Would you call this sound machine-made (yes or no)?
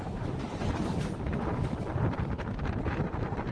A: no